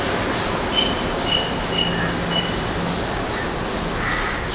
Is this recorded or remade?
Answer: recorded